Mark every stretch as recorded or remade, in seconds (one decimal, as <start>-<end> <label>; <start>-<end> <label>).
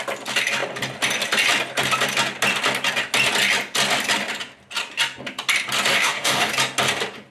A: 0.0-5.9 recorded; 5.9-6.5 remade; 6.5-7.3 recorded